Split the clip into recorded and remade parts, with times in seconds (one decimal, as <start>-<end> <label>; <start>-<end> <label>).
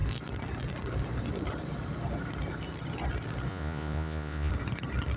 0.0-3.5 recorded; 3.5-4.5 remade; 4.5-5.2 recorded